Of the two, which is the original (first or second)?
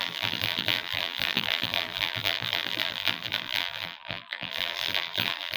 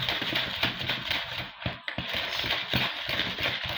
second